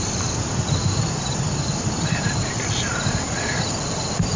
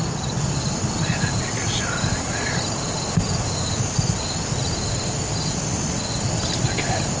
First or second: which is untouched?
second